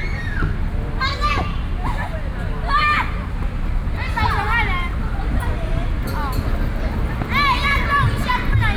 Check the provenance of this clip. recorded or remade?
recorded